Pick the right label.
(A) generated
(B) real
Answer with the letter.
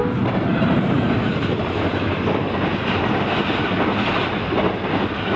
B